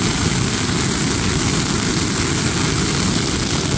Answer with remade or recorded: recorded